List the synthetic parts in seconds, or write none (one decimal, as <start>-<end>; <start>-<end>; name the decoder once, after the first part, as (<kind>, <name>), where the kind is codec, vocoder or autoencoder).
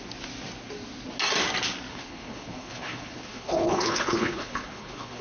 1.9-5.2 (codec, HILCodec)